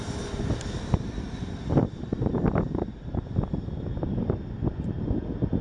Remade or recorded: recorded